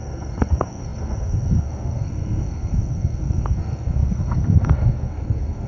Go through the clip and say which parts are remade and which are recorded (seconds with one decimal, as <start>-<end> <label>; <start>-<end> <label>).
0.0-5.7 remade